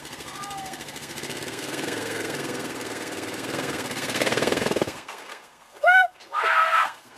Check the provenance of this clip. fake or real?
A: fake